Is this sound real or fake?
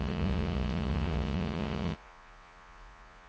fake